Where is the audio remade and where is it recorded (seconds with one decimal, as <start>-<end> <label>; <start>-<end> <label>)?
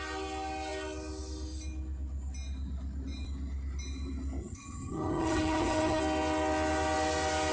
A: 0.0-4.4 recorded; 4.4-6.0 remade; 6.0-7.5 recorded